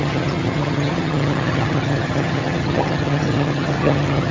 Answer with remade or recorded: remade